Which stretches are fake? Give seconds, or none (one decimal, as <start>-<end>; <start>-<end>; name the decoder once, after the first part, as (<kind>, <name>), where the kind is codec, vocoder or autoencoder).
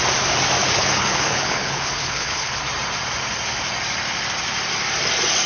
0.6-2.6 (codec, HILCodec)